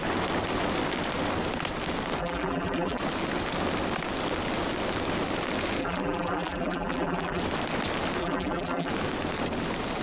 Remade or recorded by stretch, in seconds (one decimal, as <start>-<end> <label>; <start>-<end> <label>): 0.0-2.2 recorded; 2.2-3.0 remade; 3.0-5.8 recorded; 5.8-7.4 remade; 7.4-8.2 recorded; 8.2-8.9 remade; 8.9-10.0 recorded